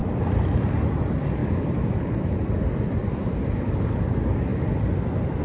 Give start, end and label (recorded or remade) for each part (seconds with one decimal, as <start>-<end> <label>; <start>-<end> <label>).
0.0-0.7 remade; 0.7-1.4 recorded; 1.4-3.8 remade; 3.8-4.5 recorded; 4.5-5.4 remade